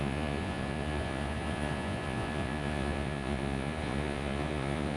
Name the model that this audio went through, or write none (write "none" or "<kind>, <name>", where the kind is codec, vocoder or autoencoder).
vocoder, Vocos